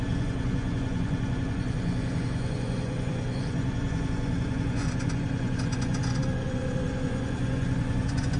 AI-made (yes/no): yes